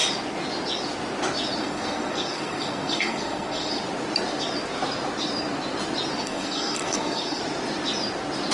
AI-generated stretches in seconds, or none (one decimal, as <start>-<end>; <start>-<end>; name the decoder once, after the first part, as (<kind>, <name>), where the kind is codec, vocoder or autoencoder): 1.6-3.7 (codec, SNAC); 6.2-7.4